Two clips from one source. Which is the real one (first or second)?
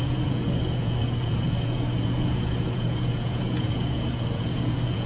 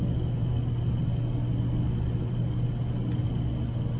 second